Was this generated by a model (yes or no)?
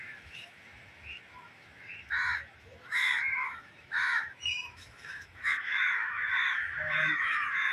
yes